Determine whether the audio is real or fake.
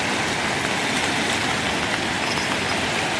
real